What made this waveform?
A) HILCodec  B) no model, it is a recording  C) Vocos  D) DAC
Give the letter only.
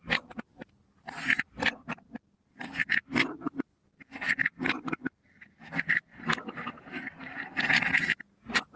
B